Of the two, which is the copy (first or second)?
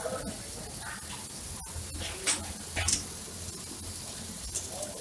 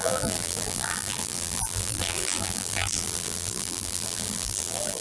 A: second